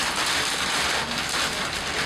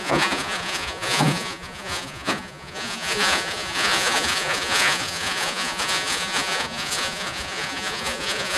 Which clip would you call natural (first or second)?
first